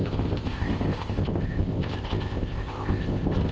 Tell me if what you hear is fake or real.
fake